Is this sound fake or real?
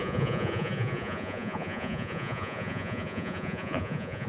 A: fake